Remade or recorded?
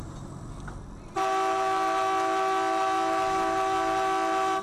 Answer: recorded